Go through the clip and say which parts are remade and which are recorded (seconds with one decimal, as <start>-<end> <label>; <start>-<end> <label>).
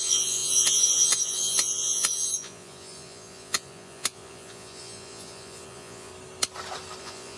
0.0-6.1 remade; 6.1-7.0 recorded; 7.0-7.4 remade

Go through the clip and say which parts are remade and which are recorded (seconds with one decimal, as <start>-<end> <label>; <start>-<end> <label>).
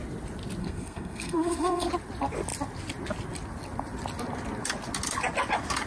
0.0-0.6 recorded; 0.6-1.9 remade; 1.9-5.9 recorded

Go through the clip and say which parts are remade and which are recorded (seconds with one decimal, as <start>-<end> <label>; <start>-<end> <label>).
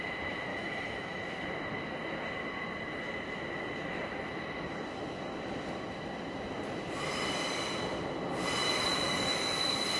0.0-0.5 recorded; 0.5-1.2 remade; 1.2-10.0 recorded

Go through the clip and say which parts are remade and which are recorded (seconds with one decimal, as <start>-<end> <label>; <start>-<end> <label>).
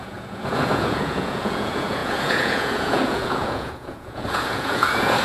0.0-5.2 remade